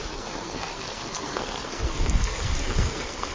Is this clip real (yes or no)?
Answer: no